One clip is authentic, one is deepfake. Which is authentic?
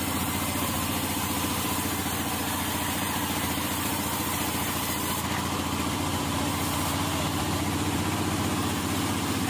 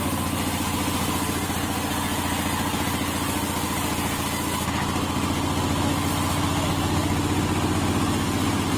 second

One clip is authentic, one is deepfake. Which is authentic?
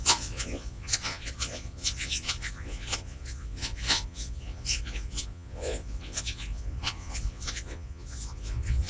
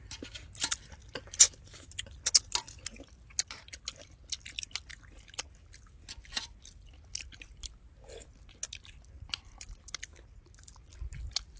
second